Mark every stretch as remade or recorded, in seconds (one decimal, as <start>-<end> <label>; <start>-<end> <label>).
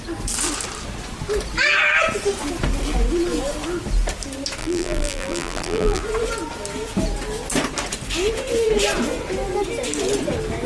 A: 0.0-4.6 recorded; 4.6-6.0 remade; 6.0-10.7 recorded